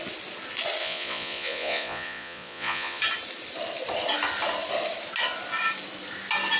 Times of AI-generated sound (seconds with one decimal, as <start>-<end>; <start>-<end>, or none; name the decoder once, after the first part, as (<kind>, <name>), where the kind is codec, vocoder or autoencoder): 0.8-3.0 (vocoder, Vocos)

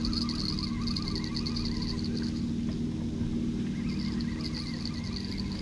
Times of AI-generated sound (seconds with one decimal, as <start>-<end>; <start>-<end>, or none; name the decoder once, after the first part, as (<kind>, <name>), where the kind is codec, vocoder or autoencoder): none

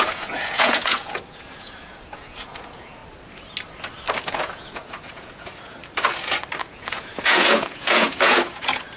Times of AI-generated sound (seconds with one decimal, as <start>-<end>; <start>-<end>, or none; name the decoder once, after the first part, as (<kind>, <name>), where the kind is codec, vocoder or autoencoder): 0.0-3.0 (vocoder, Vocos); 4.2-5.8; 6.6-9.0

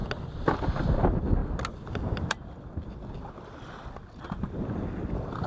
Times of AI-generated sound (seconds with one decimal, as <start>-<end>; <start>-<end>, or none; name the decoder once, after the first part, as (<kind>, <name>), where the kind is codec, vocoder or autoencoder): none

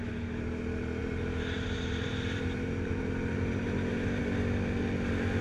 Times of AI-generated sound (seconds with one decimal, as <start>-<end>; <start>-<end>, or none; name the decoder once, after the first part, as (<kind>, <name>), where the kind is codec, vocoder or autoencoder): 1.0-4.2 (vocoder, BigVGAN v2)

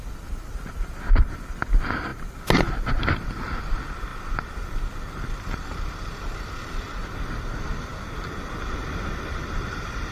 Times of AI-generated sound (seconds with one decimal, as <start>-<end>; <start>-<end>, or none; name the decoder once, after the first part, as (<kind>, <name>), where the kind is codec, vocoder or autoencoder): 0.0-2.1 (vocoder, BigVGAN v2); 2.9-7.9; 8.4-10.1

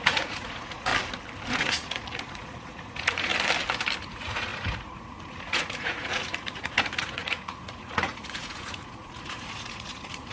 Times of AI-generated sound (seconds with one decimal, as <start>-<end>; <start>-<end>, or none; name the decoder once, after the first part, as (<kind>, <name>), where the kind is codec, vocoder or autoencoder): 0.0-0.9 (vocoder, Vocos); 1.5-3.3; 4.0-10.3

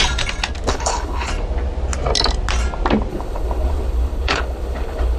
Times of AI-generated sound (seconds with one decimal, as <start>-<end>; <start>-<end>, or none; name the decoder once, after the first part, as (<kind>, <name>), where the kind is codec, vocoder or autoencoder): 0.7-1.3 (codec, HILCodec); 3.1-5.2